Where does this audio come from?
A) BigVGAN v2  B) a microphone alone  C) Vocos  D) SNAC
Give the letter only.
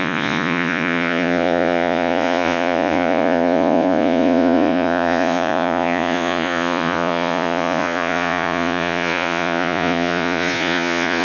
C